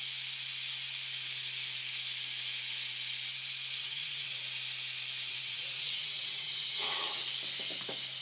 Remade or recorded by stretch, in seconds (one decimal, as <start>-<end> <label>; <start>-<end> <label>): 0.0-3.8 recorded; 3.8-4.4 remade; 4.4-5.3 recorded; 5.3-7.2 remade; 7.2-8.2 recorded